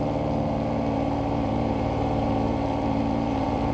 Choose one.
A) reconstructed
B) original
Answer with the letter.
A